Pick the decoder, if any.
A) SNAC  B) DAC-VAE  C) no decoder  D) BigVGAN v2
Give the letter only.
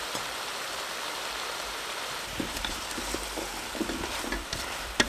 D